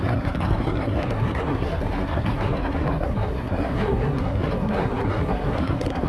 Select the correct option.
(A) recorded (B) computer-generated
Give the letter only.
B